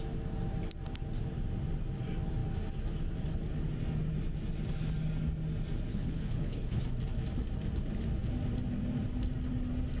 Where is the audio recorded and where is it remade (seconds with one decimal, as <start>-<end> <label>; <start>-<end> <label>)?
0.0-5.9 recorded; 5.9-6.8 remade; 6.8-10.0 recorded